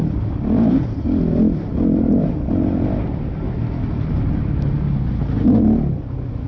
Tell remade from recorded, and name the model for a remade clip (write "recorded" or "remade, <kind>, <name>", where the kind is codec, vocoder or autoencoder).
recorded